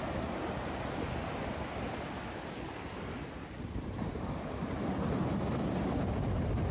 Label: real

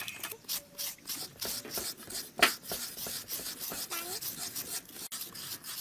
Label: real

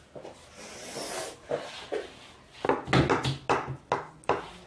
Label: real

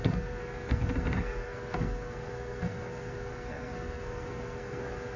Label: fake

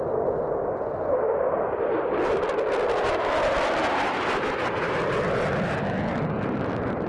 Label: real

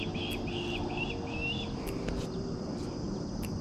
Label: real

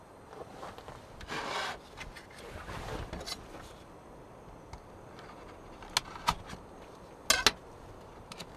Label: real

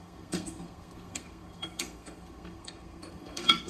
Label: fake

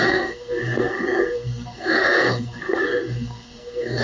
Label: fake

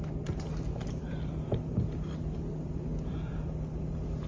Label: real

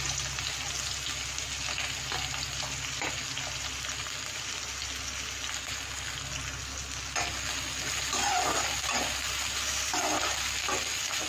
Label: real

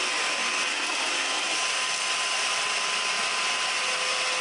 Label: real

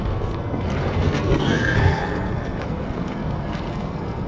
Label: fake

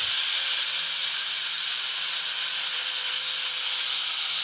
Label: real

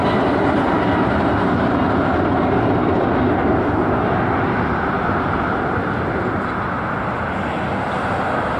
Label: real